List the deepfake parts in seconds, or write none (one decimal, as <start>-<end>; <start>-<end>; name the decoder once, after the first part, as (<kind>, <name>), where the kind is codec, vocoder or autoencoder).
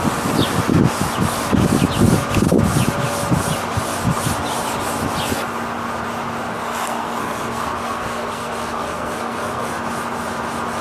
6.5-9.7 (codec, SNAC)